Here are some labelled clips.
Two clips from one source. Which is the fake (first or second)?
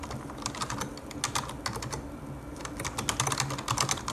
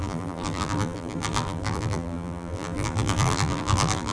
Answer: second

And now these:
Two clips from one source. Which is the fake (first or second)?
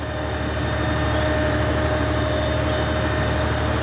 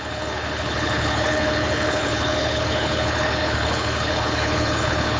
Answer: second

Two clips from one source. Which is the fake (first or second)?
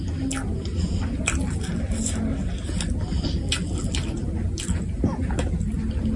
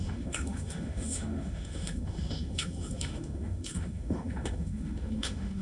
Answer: second